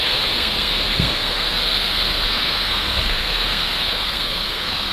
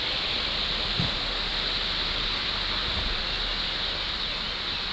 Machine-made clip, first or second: first